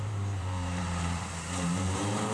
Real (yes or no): no